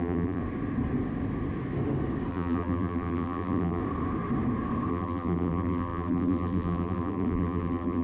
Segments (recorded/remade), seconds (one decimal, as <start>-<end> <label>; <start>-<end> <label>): 0.0-0.4 remade; 0.4-2.3 recorded; 2.3-3.8 remade; 3.8-4.9 recorded; 4.9-8.0 remade